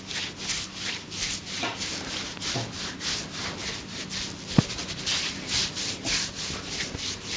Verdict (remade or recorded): recorded